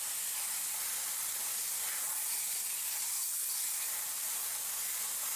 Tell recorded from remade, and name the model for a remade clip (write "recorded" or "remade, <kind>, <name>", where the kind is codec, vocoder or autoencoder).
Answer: recorded